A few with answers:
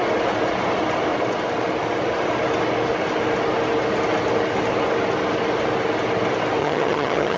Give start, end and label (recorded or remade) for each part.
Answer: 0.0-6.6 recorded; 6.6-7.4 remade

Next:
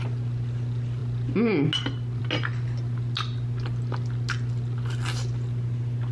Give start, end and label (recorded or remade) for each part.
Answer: 0.0-6.1 recorded

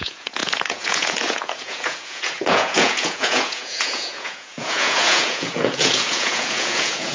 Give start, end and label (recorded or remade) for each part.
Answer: 0.0-7.1 remade

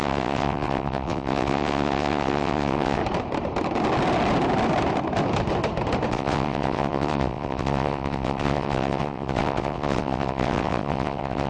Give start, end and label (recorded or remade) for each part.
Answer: 0.0-3.0 remade; 3.0-6.1 recorded; 6.1-11.5 remade

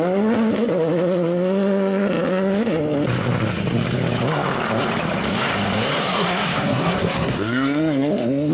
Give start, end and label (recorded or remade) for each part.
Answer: 0.0-6.0 recorded; 6.0-8.5 remade

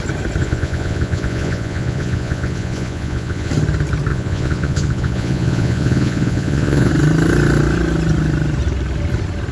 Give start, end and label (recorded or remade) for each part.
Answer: 0.0-0.4 recorded; 0.4-3.5 remade; 3.5-4.1 recorded; 4.1-6.9 remade; 6.9-9.5 recorded